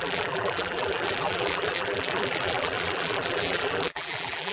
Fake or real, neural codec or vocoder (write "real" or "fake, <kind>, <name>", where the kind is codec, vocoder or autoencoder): fake, vocoder, BigVGAN v2